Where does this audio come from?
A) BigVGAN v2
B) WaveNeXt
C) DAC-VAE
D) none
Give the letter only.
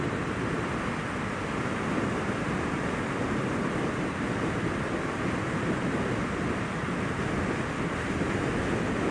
D